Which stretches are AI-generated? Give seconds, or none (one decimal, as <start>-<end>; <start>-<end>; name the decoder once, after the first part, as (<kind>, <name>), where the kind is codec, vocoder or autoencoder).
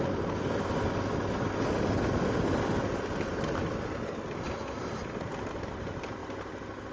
none